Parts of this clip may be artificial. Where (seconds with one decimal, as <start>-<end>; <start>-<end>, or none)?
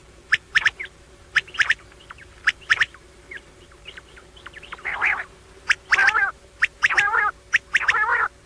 0.0-4.9; 6.0-7.2